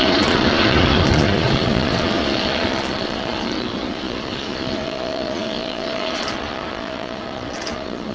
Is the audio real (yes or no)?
no